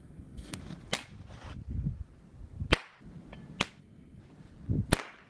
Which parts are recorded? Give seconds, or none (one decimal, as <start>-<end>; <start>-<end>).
0.6-3.8; 4.2-5.3